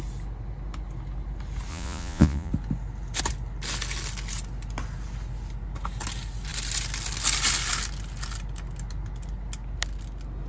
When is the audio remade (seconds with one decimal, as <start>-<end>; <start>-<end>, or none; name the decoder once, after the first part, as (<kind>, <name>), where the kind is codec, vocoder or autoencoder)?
1.7-2.5 (vocoder, Vocos)